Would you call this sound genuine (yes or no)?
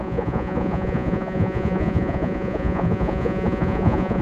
no